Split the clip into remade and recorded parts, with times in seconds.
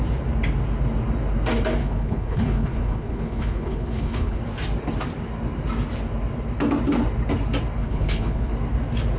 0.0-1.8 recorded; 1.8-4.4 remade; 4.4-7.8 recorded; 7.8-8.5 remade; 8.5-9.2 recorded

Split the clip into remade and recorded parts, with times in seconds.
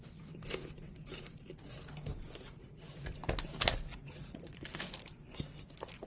0.0-2.1 recorded; 2.1-3.2 remade; 3.2-3.9 recorded; 3.9-4.6 remade; 4.6-6.1 recorded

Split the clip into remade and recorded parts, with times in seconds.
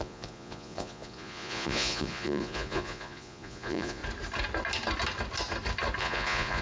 0.0-4.0 remade; 4.0-6.0 recorded; 6.0-6.6 remade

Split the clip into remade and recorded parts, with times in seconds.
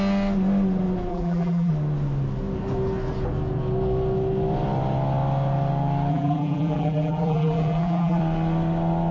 0.0-1.1 recorded; 1.1-1.7 remade; 1.7-6.1 recorded; 6.1-8.2 remade; 8.2-9.1 recorded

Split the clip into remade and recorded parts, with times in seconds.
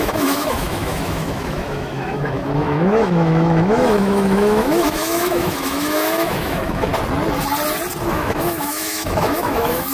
0.0-6.9 remade; 6.9-8.1 recorded; 8.1-9.9 remade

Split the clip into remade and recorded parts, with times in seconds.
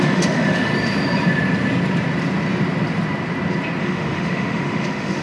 0.0-0.7 remade; 0.7-3.8 recorded; 3.8-5.2 remade